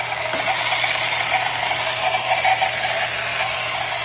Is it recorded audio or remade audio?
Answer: recorded